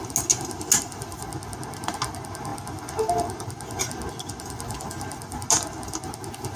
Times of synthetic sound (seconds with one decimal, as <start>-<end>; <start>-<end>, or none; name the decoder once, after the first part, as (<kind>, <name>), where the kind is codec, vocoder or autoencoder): none